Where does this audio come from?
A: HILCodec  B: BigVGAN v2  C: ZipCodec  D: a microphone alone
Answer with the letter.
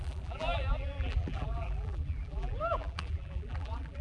B